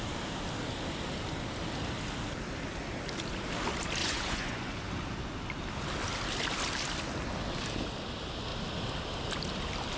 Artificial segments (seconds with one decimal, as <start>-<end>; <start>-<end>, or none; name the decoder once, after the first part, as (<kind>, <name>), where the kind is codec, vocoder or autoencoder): 4.0-4.9 (vocoder, Vocos)